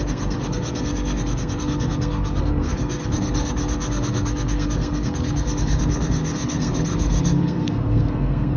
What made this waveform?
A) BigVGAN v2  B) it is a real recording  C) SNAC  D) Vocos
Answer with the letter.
C